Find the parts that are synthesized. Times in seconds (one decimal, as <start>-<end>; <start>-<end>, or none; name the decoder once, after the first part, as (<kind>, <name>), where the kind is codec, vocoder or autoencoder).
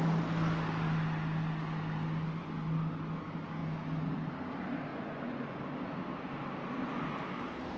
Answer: 4.9-5.6 (vocoder, Vocos)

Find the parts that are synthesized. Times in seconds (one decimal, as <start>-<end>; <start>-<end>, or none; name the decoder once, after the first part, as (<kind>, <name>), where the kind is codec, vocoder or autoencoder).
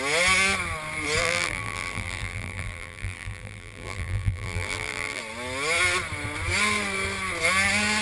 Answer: 1.2-5.2 (vocoder, BigVGAN v2)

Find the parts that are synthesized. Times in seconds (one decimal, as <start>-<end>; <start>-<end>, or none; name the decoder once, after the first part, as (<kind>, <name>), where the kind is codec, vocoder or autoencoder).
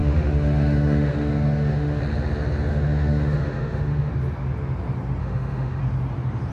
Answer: 0.0-2.0 (autoencoder, DAC-VAE); 2.7-4.1; 5.2-5.8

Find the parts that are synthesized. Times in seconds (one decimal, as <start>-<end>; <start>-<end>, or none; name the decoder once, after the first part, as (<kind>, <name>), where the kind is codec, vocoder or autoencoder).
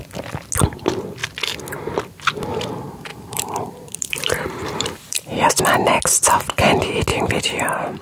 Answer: 3.1-5.6 (vocoder, BigVGAN v2); 7.1-8.0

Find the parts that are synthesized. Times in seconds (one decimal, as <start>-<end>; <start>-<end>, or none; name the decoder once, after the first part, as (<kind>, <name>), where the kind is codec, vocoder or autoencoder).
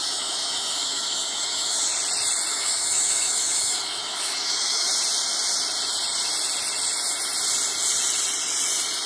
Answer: 0.0-1.9 (autoencoder, DAC-VAE); 2.5-4.9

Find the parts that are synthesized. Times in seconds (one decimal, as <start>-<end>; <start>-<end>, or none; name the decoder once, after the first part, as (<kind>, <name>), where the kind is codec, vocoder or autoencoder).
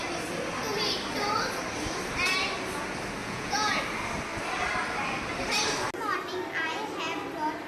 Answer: 3.2-3.8 (vocoder, Vocos)